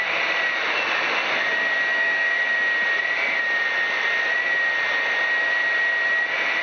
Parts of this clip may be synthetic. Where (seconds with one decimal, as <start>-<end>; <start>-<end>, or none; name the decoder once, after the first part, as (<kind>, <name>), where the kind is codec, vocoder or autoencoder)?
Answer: 1.9-2.4 (codec, DAC)